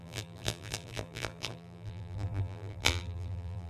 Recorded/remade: remade